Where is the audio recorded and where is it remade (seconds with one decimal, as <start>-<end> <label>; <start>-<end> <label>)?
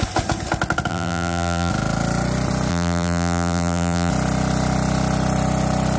0.0-0.9 recorded; 0.9-1.7 remade; 1.7-2.7 recorded; 2.7-4.1 remade; 4.1-6.0 recorded